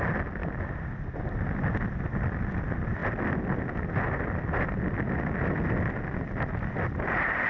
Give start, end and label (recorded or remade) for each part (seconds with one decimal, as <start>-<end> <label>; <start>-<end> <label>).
0.0-7.5 recorded